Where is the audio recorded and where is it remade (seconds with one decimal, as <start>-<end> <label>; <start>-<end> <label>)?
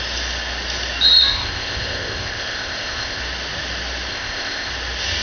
0.0-1.3 recorded; 1.3-3.2 remade; 3.2-4.1 recorded; 4.1-4.7 remade; 4.7-5.2 recorded